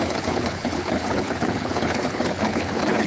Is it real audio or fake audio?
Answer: fake